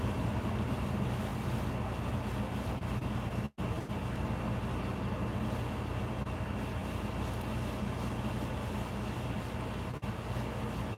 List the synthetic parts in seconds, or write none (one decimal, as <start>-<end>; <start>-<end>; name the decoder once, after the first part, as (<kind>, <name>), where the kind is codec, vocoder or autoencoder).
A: none